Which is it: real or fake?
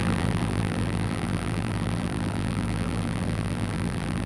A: fake